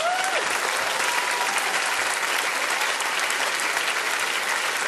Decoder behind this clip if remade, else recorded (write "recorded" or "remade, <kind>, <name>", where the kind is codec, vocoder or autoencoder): recorded